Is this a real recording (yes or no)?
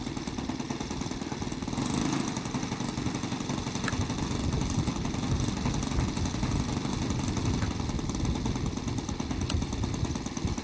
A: yes